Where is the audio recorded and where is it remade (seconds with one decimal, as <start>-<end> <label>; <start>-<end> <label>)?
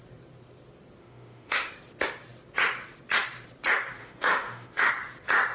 0.0-1.0 recorded; 1.0-1.7 remade; 1.7-4.0 recorded; 4.0-4.9 remade; 4.9-5.5 recorded